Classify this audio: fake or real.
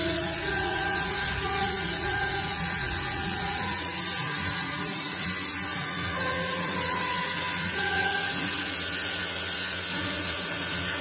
fake